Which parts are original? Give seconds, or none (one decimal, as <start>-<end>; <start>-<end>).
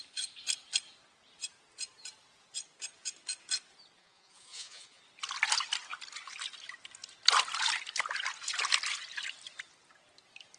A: 0.0-4.0; 5.0-10.6